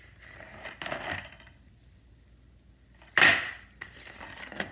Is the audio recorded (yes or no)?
yes